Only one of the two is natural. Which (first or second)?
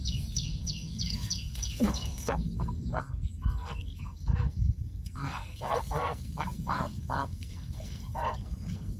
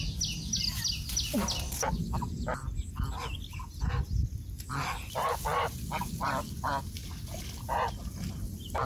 second